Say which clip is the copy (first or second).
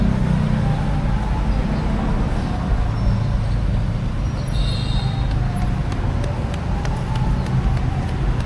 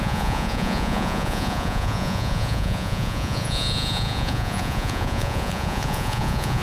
second